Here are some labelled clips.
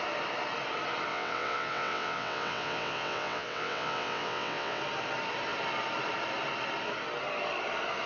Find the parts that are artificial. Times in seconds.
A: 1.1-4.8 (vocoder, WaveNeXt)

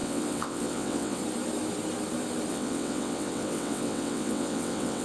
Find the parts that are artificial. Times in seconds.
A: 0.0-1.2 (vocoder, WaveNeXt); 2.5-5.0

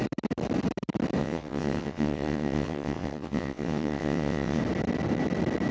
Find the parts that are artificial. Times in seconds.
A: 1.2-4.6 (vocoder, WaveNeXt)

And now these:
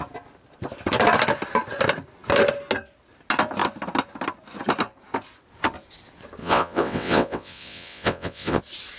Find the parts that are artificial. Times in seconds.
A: 6.4-8.6 (vocoder, WaveNeXt)

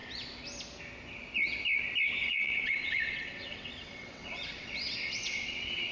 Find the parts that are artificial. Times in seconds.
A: 2.2-5.9 (vocoder, WaveNeXt)